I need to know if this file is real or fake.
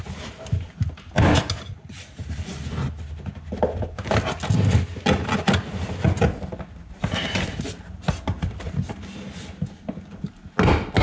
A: real